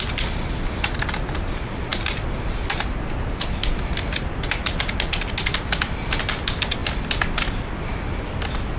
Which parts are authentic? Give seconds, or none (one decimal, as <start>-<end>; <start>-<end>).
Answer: 0.0-8.8